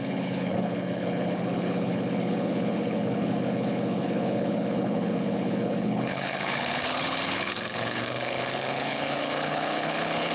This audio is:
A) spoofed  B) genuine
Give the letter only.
A